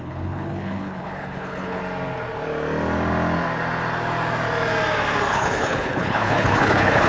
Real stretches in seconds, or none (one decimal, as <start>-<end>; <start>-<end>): 1.8-5.3